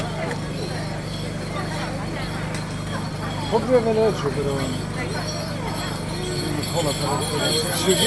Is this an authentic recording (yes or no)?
yes